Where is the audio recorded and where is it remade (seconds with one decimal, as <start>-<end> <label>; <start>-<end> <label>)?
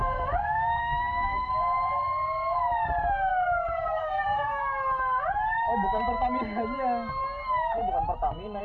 0.0-0.8 recorded; 0.8-1.5 remade; 1.5-4.0 recorded; 4.0-4.6 remade; 4.6-8.6 recorded